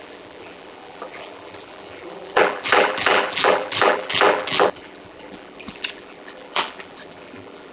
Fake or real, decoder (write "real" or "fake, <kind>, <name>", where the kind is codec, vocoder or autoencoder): fake, vocoder, BigVGAN v2